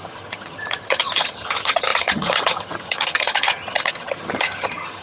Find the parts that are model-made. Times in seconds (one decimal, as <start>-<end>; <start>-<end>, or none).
0.0-5.0